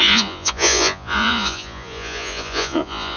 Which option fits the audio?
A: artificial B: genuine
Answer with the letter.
A